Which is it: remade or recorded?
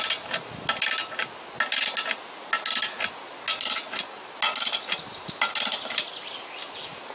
recorded